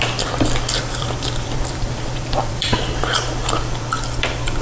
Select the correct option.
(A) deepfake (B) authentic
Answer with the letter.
A